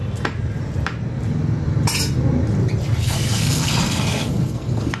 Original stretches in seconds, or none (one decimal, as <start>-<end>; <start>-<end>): 0.0-3.0